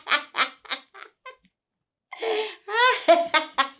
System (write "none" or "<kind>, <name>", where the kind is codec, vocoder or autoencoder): none